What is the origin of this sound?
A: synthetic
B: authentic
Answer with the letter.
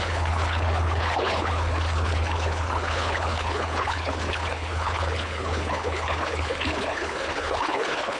A